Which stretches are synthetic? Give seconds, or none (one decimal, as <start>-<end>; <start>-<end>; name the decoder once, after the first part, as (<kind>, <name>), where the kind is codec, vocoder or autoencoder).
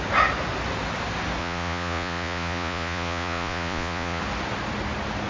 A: 1.4-4.2 (vocoder, Vocos)